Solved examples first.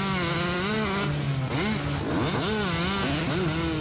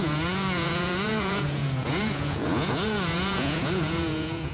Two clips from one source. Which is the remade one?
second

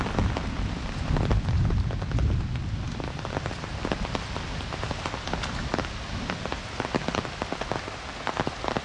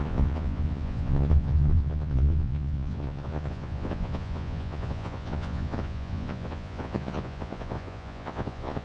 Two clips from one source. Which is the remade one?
second